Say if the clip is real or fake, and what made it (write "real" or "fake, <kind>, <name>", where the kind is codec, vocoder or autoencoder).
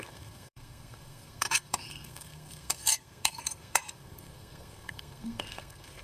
fake, codec, SNAC